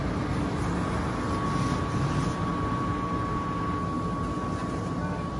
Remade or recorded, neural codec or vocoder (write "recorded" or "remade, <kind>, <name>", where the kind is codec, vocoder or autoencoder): recorded